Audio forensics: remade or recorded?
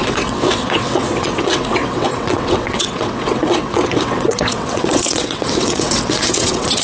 remade